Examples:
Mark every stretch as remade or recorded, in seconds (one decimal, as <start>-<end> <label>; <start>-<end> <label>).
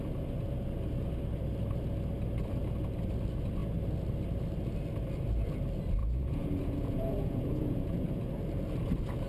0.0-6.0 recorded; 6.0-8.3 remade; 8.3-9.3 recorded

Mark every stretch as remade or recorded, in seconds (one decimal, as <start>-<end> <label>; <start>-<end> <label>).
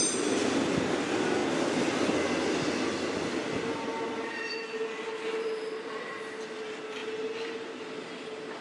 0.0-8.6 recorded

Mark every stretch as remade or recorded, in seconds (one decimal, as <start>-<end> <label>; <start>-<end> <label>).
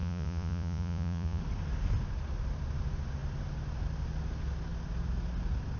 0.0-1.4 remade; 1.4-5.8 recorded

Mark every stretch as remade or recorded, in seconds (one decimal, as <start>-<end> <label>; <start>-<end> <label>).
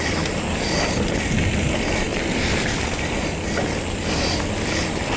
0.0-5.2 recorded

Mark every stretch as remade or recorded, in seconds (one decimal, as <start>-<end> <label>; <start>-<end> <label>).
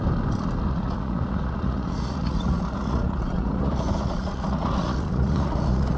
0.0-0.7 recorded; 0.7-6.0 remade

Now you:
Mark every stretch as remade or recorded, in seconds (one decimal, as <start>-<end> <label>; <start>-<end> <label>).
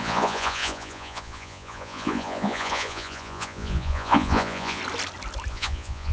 0.0-4.8 remade; 4.8-5.5 recorded; 5.5-6.1 remade